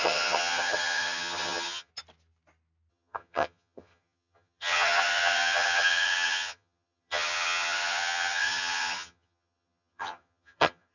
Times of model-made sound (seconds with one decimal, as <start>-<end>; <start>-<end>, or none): 0.0-1.9; 2.9-10.9